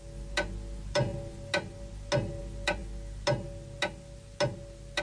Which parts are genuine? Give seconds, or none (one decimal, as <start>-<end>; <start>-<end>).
0.0-5.0